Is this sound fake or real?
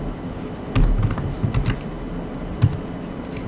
real